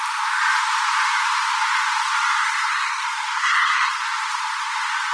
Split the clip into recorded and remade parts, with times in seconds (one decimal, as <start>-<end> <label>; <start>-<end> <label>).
0.0-2.4 recorded; 2.4-4.0 remade; 4.0-5.1 recorded